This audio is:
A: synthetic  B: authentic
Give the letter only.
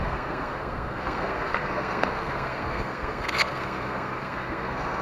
A